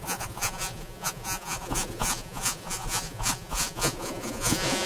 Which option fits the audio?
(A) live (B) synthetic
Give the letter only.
B